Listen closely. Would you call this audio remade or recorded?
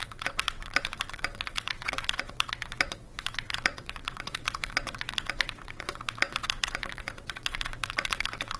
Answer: remade